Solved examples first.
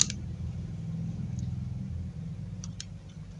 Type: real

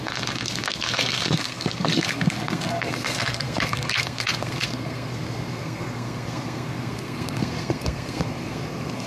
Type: fake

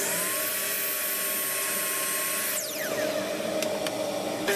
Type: real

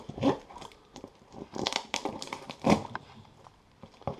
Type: fake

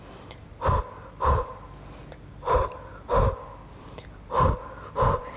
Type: real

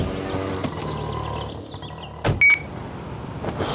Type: real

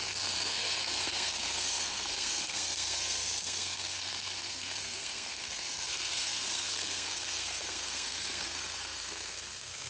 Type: fake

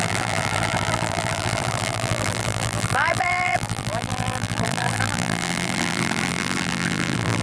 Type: fake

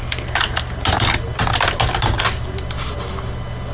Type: real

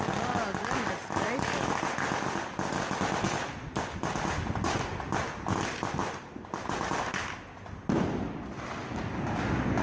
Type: real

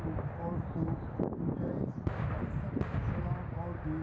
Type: real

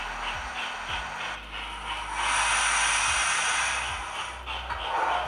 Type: real